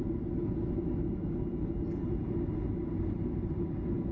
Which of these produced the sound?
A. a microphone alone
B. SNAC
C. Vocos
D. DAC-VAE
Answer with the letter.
A